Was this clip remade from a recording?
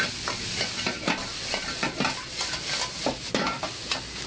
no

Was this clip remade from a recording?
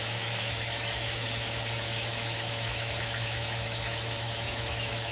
yes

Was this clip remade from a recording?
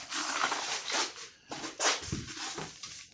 no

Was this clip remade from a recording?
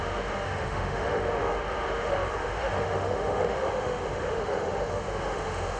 yes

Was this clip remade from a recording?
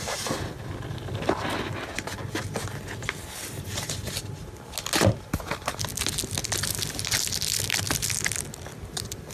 no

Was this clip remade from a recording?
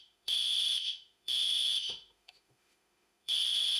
yes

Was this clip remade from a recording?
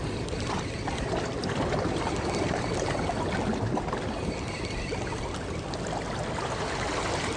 no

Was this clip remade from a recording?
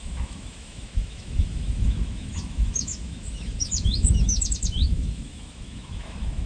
yes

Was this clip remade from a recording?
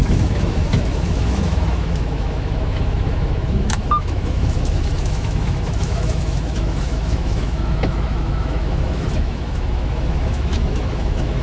yes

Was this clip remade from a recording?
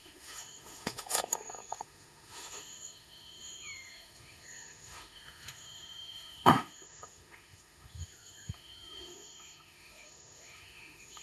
yes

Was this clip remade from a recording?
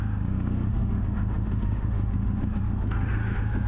yes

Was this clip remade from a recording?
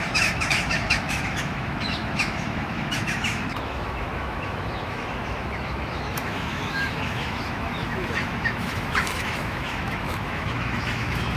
yes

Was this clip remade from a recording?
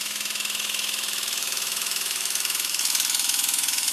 yes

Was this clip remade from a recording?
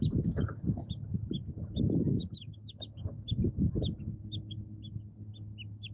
yes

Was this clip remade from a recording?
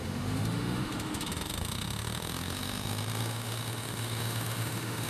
yes